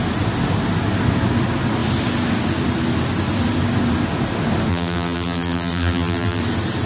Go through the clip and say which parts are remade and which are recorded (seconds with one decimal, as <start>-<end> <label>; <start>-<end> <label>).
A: 0.0-4.7 recorded; 4.7-6.4 remade; 6.4-6.9 recorded